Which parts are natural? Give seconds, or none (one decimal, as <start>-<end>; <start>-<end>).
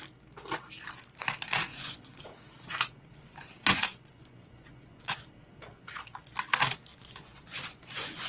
0.0-1.7; 5.9-6.9